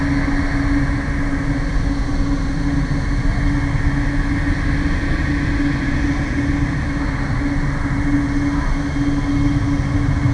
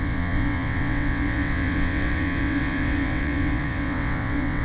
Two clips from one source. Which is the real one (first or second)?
first